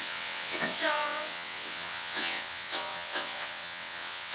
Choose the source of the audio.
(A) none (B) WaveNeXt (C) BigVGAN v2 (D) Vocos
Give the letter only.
B